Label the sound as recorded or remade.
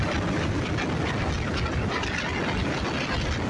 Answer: recorded